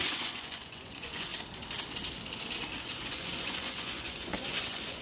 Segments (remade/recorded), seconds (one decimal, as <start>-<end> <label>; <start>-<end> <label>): 0.0-1.3 remade; 1.3-2.8 recorded; 2.8-5.0 remade